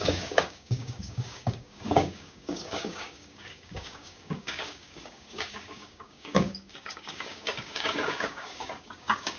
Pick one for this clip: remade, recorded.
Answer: remade